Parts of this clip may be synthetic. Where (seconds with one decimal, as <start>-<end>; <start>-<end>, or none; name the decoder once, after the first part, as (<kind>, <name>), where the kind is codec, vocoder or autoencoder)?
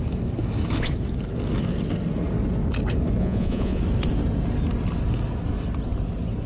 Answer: 3.2-3.8 (vocoder, Vocos)